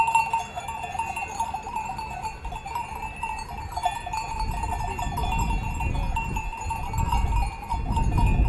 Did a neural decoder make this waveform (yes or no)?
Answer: no